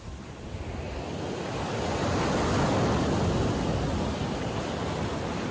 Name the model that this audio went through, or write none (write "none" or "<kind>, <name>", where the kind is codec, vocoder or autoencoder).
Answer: none